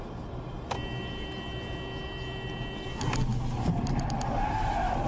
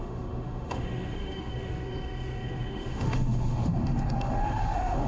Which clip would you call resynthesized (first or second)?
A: second